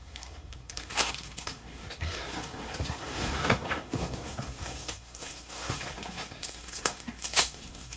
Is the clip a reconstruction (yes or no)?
yes